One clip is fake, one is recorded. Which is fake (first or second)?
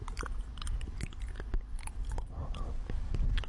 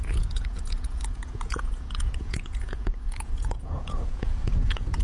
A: second